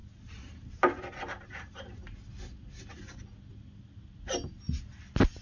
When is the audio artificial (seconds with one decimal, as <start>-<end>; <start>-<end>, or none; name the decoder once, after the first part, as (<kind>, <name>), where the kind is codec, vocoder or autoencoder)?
none